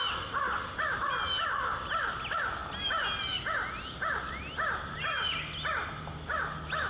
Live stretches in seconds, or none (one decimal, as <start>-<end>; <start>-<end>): 0.0-6.9